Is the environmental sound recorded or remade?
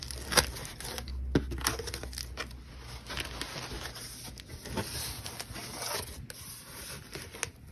recorded